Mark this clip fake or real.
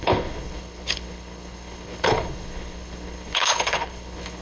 fake